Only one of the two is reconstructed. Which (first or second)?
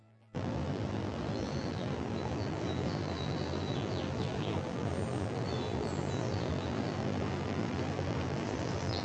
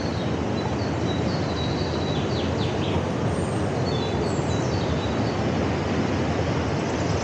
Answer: first